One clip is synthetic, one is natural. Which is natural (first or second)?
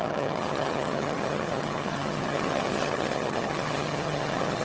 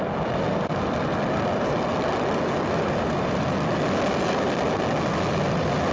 second